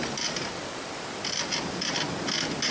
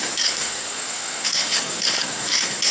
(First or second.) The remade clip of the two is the second